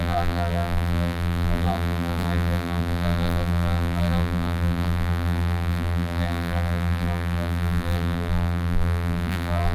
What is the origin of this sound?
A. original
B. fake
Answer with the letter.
B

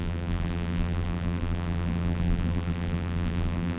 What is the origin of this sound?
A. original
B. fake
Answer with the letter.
B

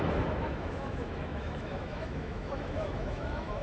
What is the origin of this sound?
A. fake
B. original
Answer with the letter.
A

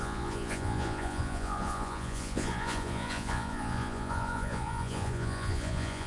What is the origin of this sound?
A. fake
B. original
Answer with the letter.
A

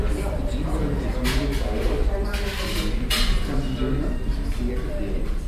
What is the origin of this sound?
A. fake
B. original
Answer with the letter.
B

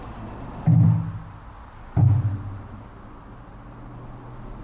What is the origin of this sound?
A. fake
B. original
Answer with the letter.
B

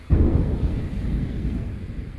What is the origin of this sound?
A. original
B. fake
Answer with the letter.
B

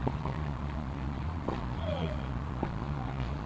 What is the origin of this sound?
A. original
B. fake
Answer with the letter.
B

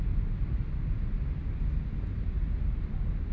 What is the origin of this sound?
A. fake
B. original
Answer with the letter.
B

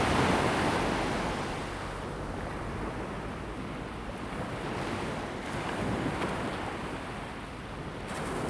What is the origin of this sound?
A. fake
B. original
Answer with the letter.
B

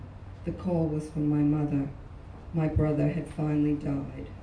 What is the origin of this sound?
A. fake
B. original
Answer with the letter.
B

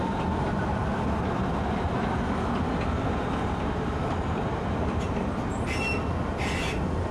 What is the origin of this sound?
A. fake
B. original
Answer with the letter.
B